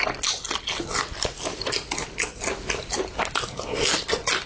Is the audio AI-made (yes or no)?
no